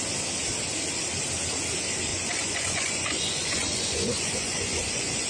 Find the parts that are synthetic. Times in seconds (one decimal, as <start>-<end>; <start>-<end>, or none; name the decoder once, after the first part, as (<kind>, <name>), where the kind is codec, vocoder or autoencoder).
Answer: 2.1-5.3 (vocoder, Vocos)